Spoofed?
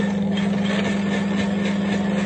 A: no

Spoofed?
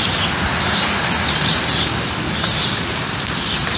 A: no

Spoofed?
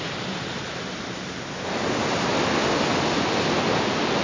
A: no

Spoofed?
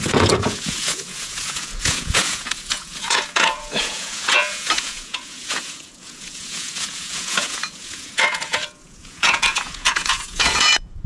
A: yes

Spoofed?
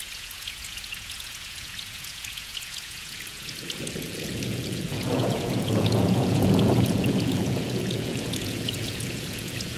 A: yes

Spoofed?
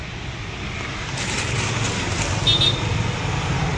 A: no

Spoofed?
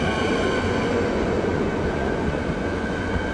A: yes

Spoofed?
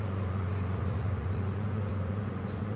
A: yes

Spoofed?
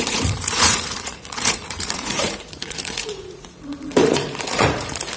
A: yes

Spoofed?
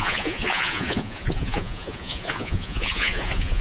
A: yes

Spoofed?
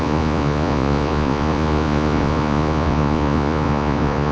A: yes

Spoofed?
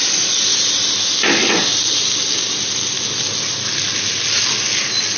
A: no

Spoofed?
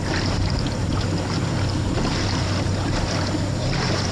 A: no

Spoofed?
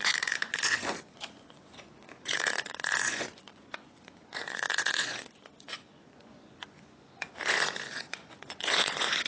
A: yes